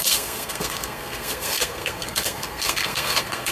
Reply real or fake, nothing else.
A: fake